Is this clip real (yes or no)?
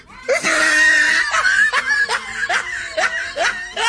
yes